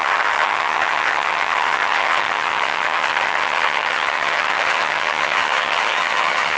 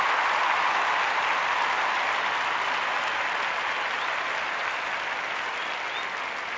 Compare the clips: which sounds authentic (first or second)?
second